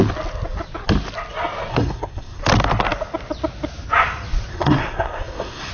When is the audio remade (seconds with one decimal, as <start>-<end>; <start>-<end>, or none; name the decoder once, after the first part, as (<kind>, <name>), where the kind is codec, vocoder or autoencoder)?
1.7-2.4 (codec, SNAC); 4.5-5.7